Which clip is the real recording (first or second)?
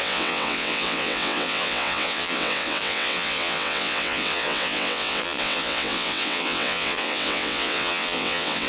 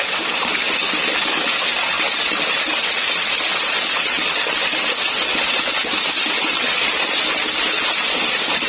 second